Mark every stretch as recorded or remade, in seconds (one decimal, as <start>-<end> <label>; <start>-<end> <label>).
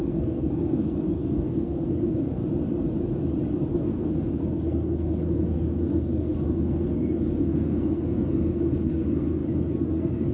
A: 0.0-2.4 remade; 2.4-3.7 recorded; 3.7-10.3 remade